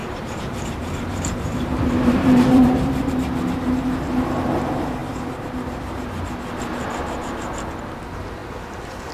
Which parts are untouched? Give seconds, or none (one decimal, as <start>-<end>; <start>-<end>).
3.1-5.0; 5.8-9.1